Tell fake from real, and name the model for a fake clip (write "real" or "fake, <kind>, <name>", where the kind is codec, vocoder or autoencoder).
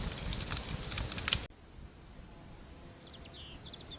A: real